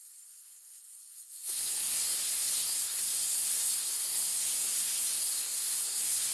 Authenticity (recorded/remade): remade